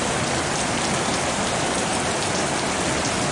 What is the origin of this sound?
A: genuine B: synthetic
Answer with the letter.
B